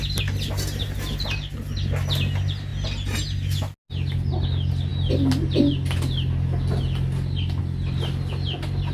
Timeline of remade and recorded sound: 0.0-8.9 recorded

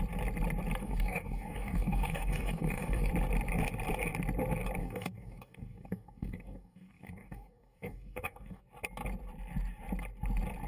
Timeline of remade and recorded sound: 0.0-0.8 recorded; 0.8-3.1 remade; 3.1-4.8 recorded; 4.8-8.6 remade; 8.6-10.7 recorded

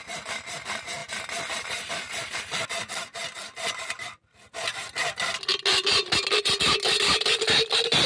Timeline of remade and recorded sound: 0.0-8.1 recorded

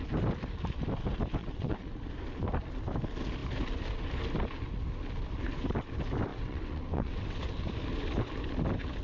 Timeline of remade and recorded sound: 0.0-1.4 recorded; 1.4-1.9 remade; 1.9-6.3 recorded; 6.3-7.4 remade; 7.4-9.0 recorded